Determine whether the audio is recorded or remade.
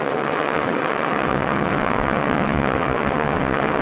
remade